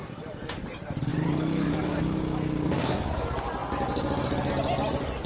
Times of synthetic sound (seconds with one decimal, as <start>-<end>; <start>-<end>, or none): 0.0-0.5; 1.1-2.0